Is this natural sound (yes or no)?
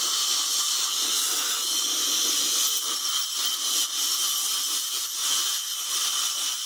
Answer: yes